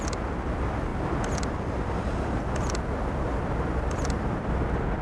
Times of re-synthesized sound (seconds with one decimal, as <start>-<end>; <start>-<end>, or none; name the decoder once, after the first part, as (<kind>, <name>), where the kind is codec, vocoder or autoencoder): none